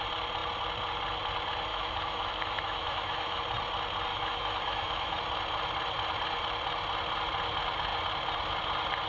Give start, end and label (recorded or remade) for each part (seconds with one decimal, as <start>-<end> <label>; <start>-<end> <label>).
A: 0.0-1.7 recorded; 1.7-3.4 remade; 3.4-4.1 recorded; 4.1-5.2 remade; 5.2-9.1 recorded